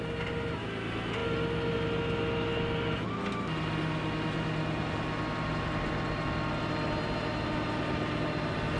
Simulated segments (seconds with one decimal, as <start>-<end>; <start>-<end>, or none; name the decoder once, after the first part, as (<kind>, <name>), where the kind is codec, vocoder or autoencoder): none

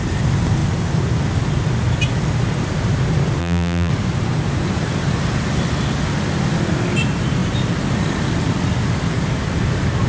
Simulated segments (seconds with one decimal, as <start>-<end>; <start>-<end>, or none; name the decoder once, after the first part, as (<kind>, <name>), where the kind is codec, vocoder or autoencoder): 3.4-3.9 (vocoder, BigVGAN v2)